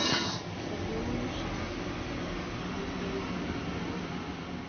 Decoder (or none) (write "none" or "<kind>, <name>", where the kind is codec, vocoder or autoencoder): none